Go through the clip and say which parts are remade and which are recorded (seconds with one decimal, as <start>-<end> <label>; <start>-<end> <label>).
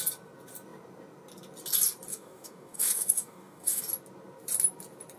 0.0-2.1 recorded; 2.1-3.8 remade; 3.8-5.2 recorded